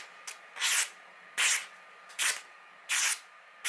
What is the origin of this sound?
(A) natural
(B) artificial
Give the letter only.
A